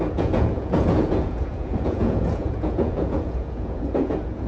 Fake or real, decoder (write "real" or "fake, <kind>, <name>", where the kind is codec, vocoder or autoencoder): fake, vocoder, Vocos